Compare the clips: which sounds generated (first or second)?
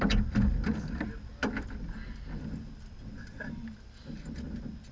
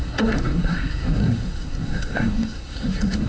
second